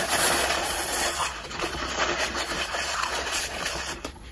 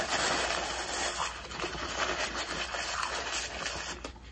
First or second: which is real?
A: second